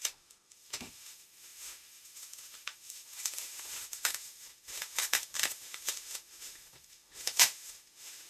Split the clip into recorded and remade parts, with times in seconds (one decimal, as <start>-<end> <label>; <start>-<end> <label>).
0.0-8.3 remade